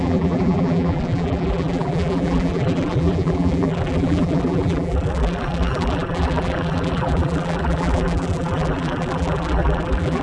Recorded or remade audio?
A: remade